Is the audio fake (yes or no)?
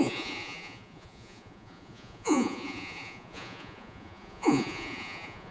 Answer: yes